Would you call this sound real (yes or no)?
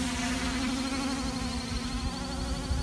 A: yes